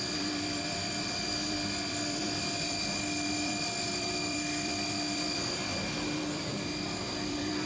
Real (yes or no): no